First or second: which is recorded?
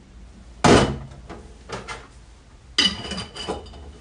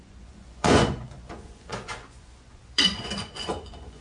first